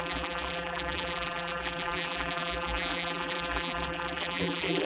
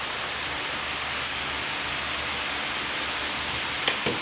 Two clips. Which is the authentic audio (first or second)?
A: second